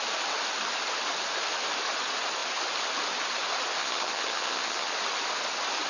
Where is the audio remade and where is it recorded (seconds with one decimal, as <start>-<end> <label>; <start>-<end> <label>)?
0.0-3.8 recorded; 3.8-4.9 remade; 4.9-5.9 recorded